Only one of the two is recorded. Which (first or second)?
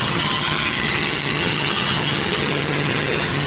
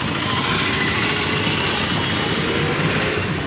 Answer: second